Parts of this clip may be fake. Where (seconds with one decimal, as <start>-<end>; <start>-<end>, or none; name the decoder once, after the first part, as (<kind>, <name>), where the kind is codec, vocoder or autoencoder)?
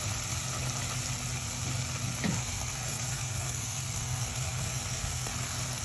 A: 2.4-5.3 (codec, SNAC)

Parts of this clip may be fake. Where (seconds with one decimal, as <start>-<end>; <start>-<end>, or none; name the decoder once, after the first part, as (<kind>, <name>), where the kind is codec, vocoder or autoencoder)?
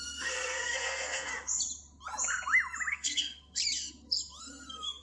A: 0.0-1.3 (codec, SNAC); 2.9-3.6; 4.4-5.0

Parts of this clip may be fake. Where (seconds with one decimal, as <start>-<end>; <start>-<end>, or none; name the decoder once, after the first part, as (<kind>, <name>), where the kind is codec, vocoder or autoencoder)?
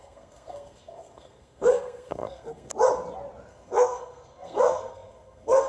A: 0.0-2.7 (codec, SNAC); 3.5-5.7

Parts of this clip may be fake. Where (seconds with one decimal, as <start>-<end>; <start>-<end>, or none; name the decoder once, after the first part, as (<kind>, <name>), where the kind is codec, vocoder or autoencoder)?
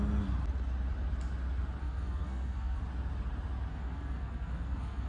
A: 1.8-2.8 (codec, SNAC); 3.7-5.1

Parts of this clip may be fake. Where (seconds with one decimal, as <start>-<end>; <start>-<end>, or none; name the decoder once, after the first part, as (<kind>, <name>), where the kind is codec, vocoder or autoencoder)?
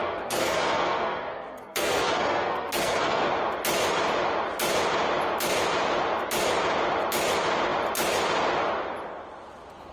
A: 0.0-3.3 (codec, SNAC)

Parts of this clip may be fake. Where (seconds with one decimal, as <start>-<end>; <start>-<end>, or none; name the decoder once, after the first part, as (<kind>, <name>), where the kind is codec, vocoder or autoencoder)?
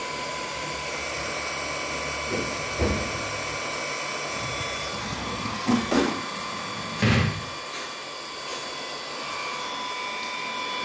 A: 5.0-6.1 (codec, SNAC)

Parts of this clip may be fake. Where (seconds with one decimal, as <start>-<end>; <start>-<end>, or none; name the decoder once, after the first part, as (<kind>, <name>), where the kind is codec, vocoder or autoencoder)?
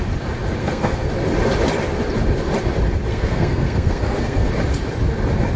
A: 0.6-1.1 (codec, SNAC); 3.1-4.5